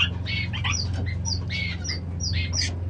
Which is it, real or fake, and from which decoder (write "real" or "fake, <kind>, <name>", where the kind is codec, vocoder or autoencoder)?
real